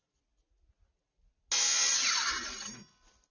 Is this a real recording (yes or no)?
yes